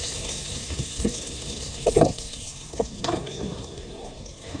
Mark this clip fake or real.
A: fake